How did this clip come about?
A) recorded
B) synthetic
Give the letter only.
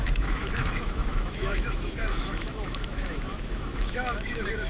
B